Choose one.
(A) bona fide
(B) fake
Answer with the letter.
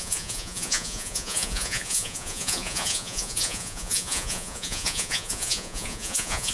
B